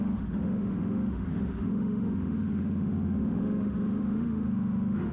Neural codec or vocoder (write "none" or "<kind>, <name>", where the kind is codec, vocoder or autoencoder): autoencoder, DAC-VAE